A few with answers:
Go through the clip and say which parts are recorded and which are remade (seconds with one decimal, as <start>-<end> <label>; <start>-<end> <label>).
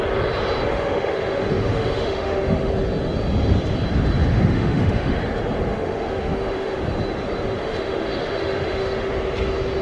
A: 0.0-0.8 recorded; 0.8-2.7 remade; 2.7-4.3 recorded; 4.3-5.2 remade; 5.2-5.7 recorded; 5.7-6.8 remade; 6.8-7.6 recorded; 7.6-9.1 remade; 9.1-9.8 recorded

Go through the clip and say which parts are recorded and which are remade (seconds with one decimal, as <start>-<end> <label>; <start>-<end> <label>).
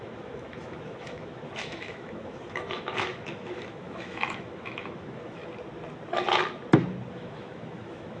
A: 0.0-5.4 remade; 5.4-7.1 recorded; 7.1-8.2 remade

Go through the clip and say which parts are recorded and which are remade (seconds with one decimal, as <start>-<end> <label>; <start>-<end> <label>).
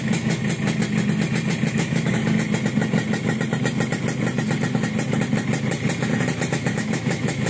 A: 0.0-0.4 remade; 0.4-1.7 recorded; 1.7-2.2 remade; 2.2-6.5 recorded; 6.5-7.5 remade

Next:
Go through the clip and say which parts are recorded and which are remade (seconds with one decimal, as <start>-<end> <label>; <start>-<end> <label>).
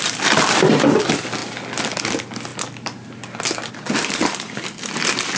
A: 0.0-5.4 recorded